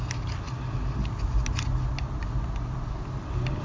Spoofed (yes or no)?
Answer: no